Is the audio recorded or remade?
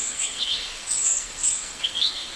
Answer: remade